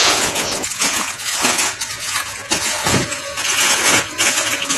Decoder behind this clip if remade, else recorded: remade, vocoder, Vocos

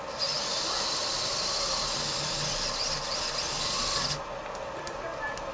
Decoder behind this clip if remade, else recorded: recorded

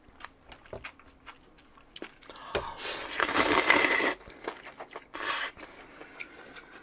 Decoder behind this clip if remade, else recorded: recorded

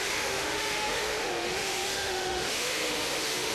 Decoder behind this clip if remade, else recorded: remade, autoencoder, DAC-VAE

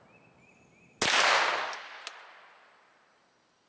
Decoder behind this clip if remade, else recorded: recorded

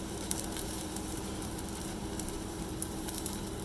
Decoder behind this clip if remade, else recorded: remade, vocoder, BigVGAN v2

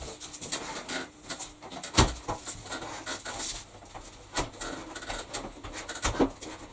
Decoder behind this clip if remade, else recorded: recorded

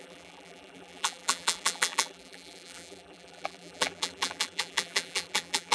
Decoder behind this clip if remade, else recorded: remade, vocoder, BigVGAN v2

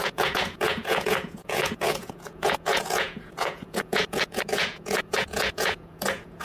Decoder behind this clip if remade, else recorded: remade, vocoder, Vocos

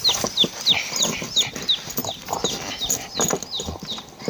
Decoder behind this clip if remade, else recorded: recorded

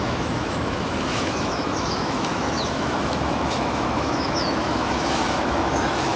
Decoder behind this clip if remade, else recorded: remade, autoencoder, DAC-VAE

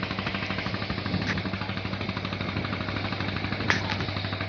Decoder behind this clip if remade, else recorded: recorded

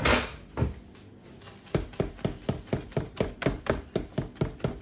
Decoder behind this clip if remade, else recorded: recorded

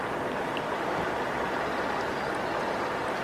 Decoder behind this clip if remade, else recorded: recorded